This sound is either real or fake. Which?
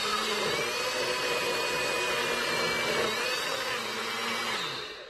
real